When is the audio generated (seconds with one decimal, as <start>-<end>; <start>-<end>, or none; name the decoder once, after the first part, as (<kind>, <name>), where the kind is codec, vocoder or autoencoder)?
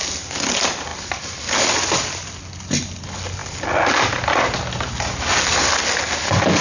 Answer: none